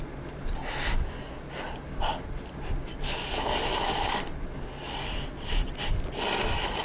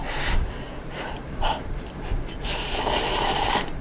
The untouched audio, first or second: first